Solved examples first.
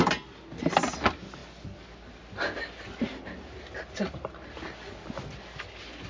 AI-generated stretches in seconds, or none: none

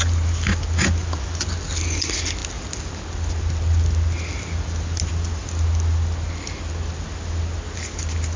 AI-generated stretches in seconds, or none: none